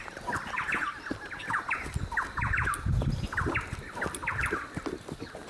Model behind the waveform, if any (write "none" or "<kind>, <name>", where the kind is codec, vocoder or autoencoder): none